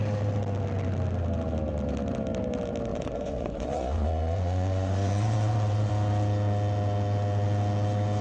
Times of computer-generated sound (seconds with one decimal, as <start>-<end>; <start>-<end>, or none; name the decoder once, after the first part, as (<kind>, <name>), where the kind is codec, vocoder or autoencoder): 2.9-5.9 (vocoder, Vocos)